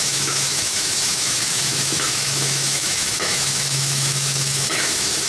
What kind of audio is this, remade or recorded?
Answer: remade